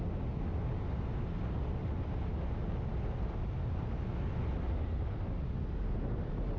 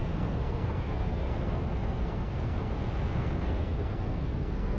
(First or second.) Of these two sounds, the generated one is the second